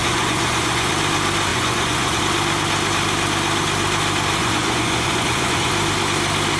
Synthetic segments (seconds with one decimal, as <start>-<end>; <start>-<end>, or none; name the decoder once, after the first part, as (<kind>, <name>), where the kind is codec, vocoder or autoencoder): 0.0-0.9 (vocoder, Vocos); 1.5-2.2; 4.4-5.7